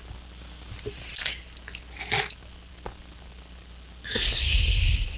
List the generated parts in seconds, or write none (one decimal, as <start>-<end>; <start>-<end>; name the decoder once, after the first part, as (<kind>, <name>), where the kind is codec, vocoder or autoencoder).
none